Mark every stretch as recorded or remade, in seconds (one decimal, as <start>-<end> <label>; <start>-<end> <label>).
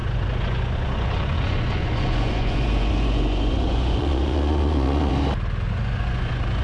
0.0-5.1 remade; 5.1-5.7 recorded; 5.7-6.6 remade